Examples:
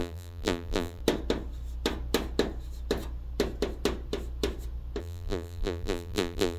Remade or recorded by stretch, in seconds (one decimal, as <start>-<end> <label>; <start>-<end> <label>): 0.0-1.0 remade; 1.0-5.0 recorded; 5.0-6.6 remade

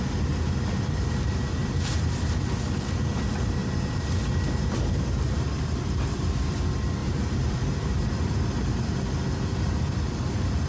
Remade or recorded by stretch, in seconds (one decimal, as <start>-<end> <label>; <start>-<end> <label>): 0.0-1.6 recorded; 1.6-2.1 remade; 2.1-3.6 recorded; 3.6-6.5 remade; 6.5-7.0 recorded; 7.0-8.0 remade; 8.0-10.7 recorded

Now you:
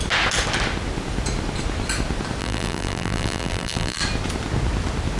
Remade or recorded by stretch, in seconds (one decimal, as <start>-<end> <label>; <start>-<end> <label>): 0.0-2.4 recorded; 2.4-4.0 remade; 4.0-5.2 recorded

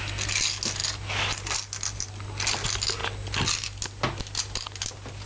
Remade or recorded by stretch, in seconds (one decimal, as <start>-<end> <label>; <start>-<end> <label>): 0.0-0.8 recorded; 0.8-2.1 remade; 2.1-5.3 recorded